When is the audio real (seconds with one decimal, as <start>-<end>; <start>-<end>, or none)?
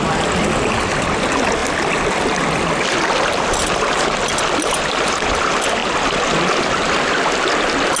0.0-8.0